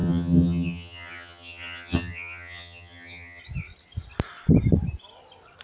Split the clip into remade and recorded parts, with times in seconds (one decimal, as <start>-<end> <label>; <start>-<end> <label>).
0.0-3.4 remade; 3.4-5.6 recorded